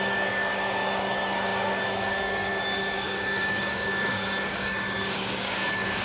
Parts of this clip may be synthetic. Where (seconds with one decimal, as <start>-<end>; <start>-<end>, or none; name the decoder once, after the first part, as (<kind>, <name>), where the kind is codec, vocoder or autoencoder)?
0.0-6.0 (codec, DAC)